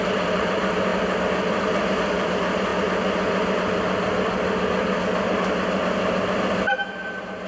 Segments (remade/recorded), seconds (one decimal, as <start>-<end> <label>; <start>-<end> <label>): 0.0-0.9 remade; 0.9-1.5 recorded; 1.5-2.7 remade; 2.7-7.5 recorded